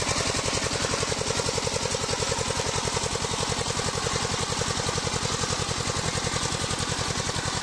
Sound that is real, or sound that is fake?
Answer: real